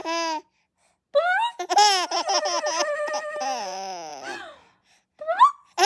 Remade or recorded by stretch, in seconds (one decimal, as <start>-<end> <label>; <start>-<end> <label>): 0.0-5.9 recorded